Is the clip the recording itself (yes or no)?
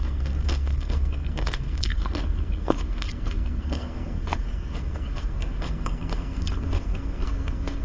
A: no